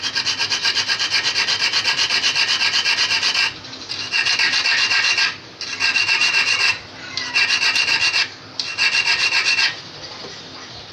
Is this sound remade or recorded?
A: recorded